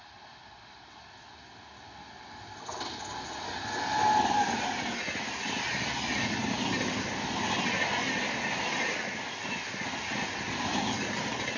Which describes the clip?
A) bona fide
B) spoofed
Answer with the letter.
A